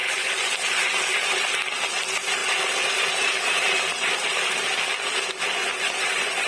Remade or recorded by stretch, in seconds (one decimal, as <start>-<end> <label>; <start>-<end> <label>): 0.0-0.5 remade; 0.5-5.6 recorded; 5.6-6.5 remade

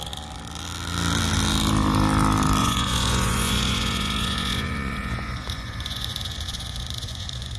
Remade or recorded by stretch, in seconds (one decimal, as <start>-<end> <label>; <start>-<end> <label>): 0.0-2.6 recorded; 2.6-7.6 remade